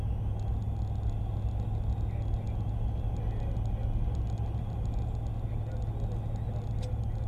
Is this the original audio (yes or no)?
yes